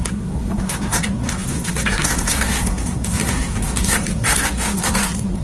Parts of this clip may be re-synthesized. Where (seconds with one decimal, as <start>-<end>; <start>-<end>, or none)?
0.0-5.4